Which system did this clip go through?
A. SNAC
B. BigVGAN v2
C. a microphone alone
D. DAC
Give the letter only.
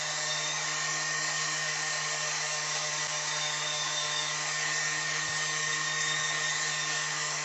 D